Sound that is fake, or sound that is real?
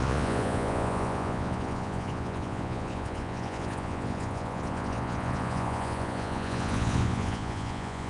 fake